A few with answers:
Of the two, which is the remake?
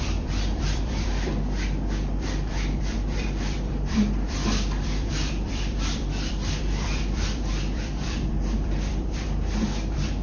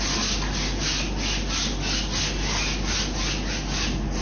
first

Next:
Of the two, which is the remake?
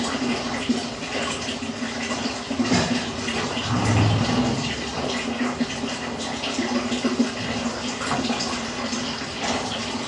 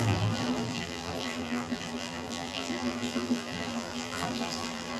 second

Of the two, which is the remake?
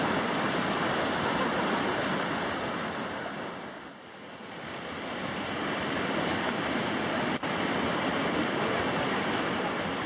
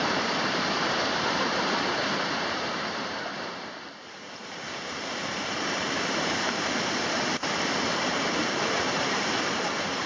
second